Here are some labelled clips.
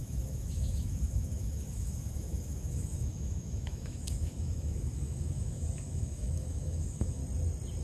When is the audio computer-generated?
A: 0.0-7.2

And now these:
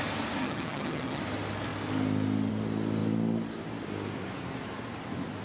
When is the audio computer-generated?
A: 0.4-1.2

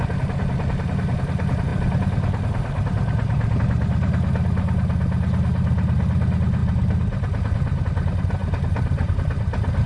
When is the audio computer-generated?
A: none

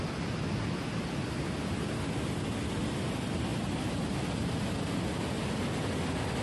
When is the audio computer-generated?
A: none